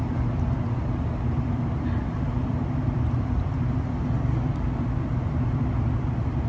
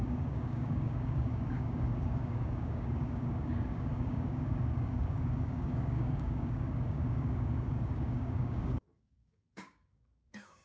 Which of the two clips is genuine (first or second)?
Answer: first